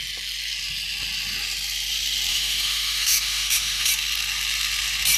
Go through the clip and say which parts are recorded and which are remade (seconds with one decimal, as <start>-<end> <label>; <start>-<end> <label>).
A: 0.0-2.3 recorded; 2.3-3.9 remade; 3.9-5.2 recorded